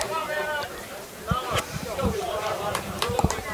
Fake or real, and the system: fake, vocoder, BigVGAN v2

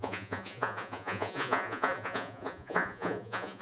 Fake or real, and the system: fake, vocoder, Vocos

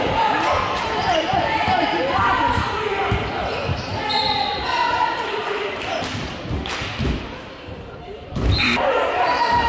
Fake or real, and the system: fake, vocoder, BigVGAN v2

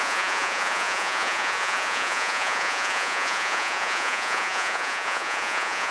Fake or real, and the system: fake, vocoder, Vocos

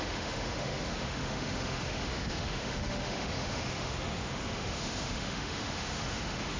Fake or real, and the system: fake, autoencoder, DAC-VAE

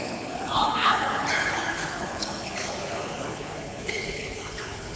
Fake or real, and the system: fake, codec, HILCodec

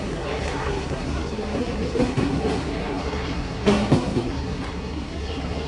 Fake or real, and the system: fake, codec, SNAC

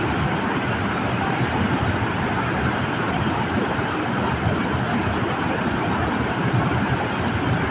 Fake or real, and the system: real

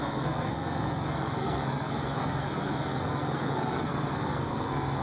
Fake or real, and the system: fake, codec, SNAC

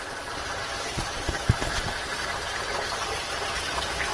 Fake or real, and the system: real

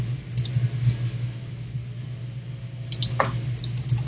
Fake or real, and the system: real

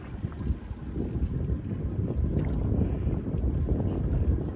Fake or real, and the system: real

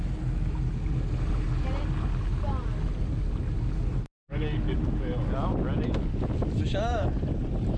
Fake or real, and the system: real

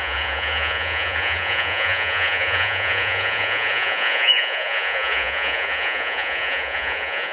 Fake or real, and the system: fake, vocoder, Vocos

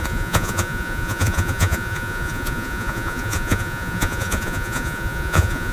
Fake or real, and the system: fake, vocoder, Vocos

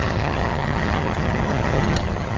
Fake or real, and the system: fake, vocoder, HiFi-GAN